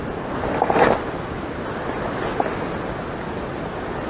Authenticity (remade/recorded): recorded